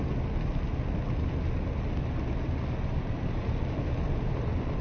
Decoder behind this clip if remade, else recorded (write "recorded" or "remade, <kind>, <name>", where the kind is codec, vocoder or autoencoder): recorded